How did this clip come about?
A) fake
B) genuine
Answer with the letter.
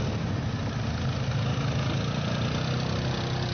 B